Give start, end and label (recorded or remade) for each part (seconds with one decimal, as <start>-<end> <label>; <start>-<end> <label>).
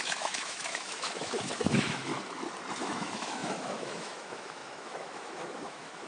0.0-2.1 remade; 2.1-2.8 recorded; 2.8-6.1 remade